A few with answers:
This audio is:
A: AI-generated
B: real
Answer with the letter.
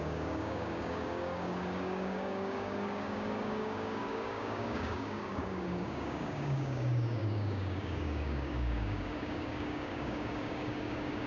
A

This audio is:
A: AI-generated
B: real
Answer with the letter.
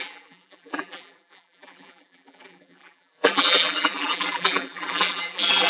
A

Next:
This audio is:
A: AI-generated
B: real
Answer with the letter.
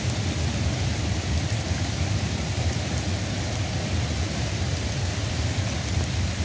A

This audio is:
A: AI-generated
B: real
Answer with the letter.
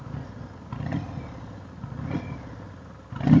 B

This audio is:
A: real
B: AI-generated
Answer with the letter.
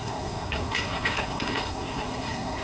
B